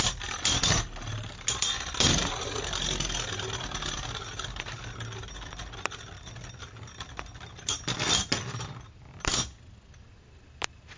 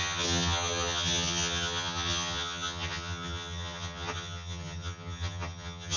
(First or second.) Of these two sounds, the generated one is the second